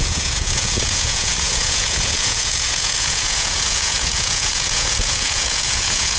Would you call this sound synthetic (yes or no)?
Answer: yes